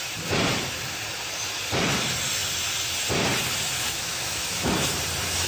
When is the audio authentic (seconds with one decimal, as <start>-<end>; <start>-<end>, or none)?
0.0-3.8; 4.7-5.5